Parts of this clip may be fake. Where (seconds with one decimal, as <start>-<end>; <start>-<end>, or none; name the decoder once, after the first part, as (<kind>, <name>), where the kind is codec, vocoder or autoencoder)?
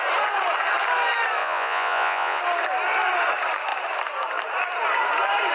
1.4-2.4 (vocoder, Vocos)